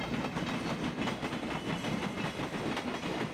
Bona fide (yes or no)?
yes